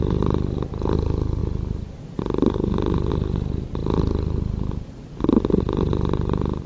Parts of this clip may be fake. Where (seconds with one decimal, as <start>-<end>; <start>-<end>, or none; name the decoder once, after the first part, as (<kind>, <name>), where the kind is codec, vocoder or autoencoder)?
none